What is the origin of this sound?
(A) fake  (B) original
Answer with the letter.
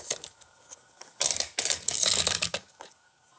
A